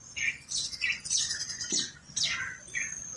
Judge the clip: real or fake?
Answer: fake